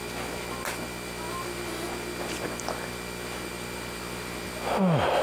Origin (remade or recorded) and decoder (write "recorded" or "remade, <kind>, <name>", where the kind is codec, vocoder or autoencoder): recorded